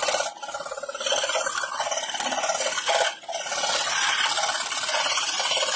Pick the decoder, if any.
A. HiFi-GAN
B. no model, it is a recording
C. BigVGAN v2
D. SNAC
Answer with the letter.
B